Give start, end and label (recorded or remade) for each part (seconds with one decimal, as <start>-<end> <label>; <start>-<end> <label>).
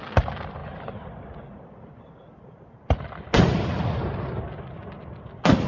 0.0-5.7 recorded